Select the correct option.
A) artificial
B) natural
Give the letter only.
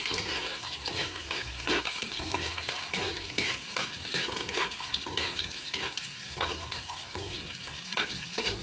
A